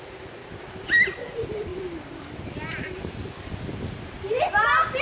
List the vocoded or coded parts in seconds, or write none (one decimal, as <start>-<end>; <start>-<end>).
none